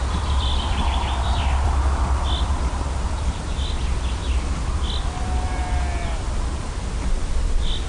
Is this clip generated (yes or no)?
yes